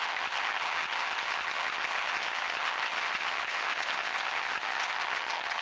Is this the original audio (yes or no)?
no